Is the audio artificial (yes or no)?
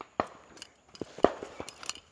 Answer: no